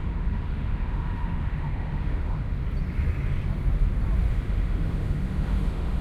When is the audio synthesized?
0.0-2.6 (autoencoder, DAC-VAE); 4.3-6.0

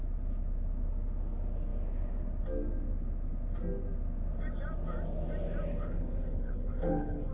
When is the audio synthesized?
5.7-7.3 (codec, HILCodec)

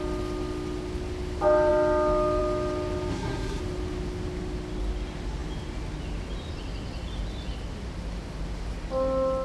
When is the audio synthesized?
3.1-3.6 (codec, SNAC)

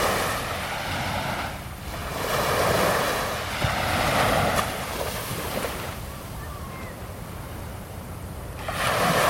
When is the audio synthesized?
2.0-3.2 (vocoder, BigVGAN v2); 5.3-6.8; 7.7-8.4

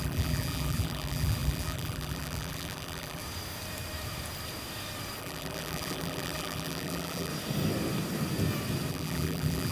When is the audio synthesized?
0.0-3.2 (vocoder, BigVGAN v2); 5.2-7.3; 8.9-9.7